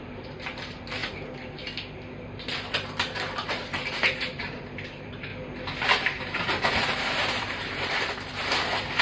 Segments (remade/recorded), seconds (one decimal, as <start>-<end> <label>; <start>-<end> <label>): 0.0-1.0 remade; 1.0-2.2 recorded; 2.2-5.3 remade; 5.3-5.9 recorded; 5.9-9.0 remade